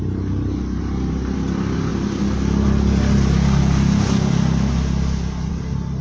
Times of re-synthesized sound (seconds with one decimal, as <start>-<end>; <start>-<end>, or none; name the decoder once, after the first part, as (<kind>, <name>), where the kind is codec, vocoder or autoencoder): none